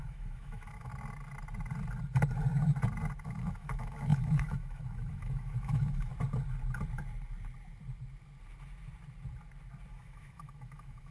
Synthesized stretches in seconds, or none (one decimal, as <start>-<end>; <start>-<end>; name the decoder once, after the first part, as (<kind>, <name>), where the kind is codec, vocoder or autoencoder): 0.0-0.9 (autoencoder, DAC-VAE); 3.2-6.1; 9.9-11.1